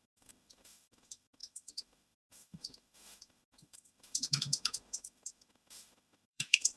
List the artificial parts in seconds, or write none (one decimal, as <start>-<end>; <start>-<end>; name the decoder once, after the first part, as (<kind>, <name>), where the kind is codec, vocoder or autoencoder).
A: 0.0-6.8 (autoencoder, DAC-VAE)